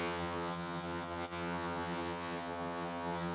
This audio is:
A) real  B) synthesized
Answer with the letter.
B